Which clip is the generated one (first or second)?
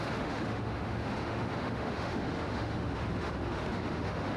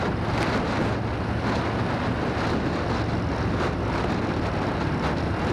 first